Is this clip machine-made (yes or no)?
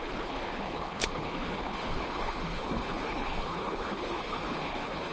yes